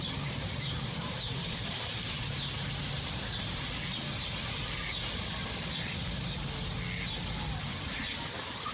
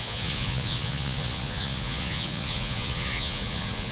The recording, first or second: first